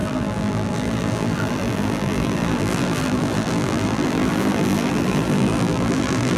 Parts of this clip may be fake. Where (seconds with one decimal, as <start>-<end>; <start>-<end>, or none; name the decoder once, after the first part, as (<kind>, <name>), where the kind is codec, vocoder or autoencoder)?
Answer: 0.0-6.4 (vocoder, BigVGAN v2)